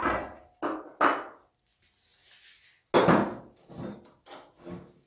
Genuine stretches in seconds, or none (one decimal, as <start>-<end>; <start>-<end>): 0.0-5.1